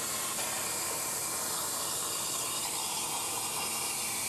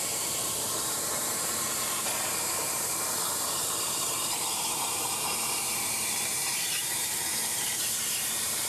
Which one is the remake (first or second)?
second